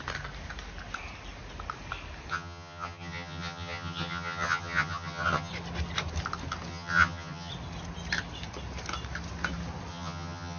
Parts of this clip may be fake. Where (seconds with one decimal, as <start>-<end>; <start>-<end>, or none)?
2.3-5.5; 6.7-7.5; 9.9-10.6